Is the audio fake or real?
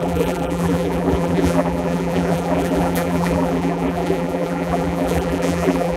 fake